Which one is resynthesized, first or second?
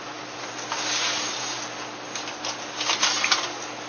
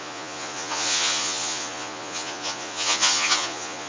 second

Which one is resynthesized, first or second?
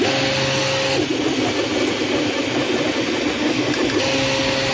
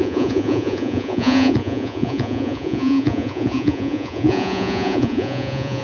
second